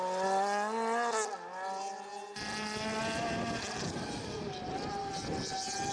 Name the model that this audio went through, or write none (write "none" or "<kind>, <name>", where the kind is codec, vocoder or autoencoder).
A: none